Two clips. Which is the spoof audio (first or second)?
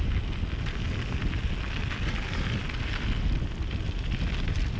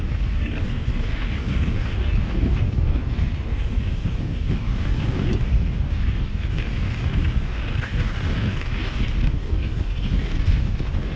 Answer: second